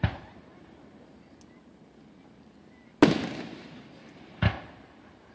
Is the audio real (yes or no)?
yes